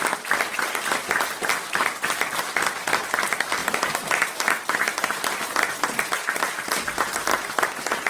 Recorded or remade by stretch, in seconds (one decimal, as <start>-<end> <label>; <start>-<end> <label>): 0.0-1.5 recorded; 1.5-2.4 remade; 2.4-3.6 recorded; 3.6-5.7 remade; 5.7-7.3 recorded; 7.3-8.1 remade